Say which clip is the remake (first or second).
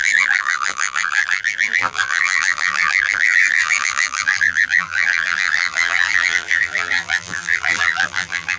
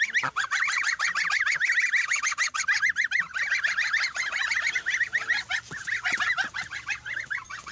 first